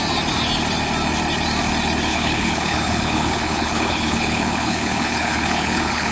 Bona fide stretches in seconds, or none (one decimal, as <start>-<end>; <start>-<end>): 0.0-2.1